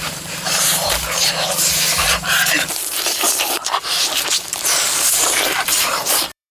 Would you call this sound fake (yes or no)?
yes